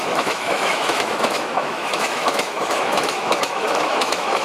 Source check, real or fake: fake